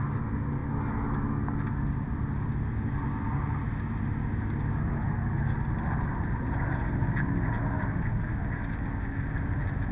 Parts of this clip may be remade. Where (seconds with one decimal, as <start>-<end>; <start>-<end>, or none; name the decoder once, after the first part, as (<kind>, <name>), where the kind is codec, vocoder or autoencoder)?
none